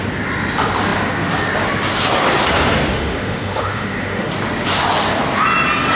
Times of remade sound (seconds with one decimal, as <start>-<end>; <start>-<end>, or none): 2.9-4.3